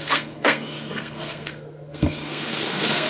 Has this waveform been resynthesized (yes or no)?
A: yes